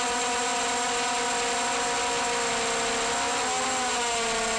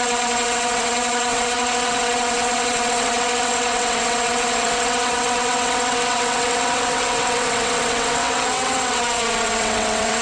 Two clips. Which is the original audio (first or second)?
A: first